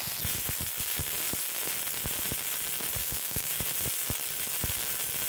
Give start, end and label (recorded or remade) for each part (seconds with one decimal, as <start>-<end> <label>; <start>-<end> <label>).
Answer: 0.0-3.0 recorded; 3.0-3.6 remade; 3.6-5.3 recorded